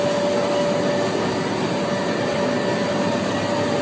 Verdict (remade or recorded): recorded